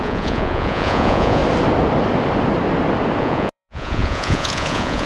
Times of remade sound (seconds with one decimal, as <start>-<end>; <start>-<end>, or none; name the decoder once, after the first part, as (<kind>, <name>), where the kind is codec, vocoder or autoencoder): 0.0-1.4 (vocoder, Vocos); 3.2-5.1